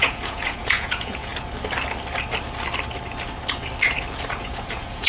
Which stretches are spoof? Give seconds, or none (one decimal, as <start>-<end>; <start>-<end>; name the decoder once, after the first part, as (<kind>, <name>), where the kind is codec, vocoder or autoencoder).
0.0-1.3 (vocoder, Vocos); 4.4-5.1